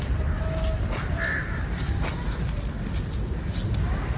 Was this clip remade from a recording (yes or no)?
no